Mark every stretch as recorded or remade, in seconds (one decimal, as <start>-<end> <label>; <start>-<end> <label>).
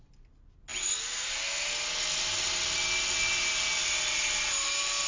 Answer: 0.0-5.1 recorded